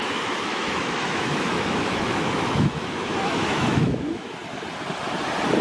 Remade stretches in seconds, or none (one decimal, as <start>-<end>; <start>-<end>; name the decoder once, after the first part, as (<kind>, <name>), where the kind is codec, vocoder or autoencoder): 0.0-4.4 (autoencoder, DAC-VAE)